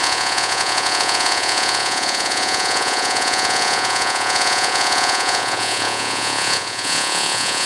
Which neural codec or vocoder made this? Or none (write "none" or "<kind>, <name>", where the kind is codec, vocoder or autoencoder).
vocoder, Vocos